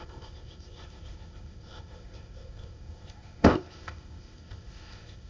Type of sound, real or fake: fake